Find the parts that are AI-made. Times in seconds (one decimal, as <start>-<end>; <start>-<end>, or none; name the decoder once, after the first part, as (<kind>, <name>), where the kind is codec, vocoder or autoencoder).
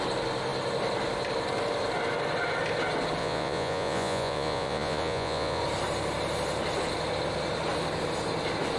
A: 3.2-5.6 (vocoder, Vocos)